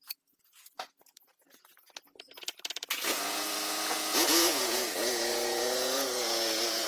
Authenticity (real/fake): fake